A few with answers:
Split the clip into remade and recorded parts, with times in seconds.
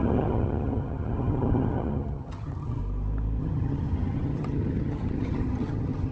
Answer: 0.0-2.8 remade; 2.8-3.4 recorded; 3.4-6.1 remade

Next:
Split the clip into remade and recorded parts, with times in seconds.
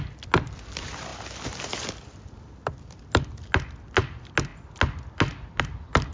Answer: 0.0-6.1 recorded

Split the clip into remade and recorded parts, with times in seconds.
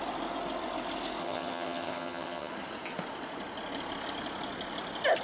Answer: 0.0-1.2 recorded; 1.2-2.5 remade; 2.5-5.2 recorded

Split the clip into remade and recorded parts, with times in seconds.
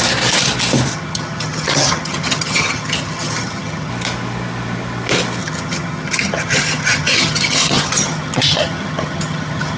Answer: 0.0-0.9 recorded; 0.9-3.9 remade; 3.9-5.4 recorded; 5.4-9.8 remade